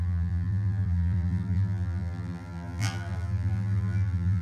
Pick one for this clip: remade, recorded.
remade